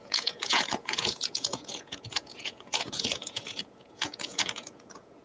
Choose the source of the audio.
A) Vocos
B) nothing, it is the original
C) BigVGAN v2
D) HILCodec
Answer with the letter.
A